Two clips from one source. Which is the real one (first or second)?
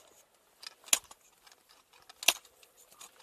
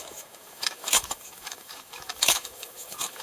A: first